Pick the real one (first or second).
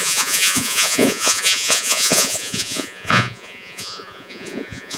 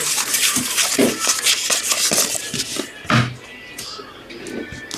second